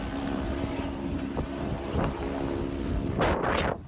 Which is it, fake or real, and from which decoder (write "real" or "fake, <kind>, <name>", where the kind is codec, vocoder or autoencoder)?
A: real